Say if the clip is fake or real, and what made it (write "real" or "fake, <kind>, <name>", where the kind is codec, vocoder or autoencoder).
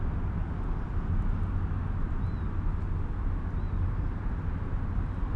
real